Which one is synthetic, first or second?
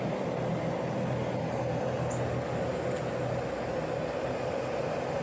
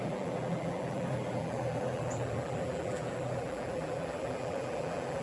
second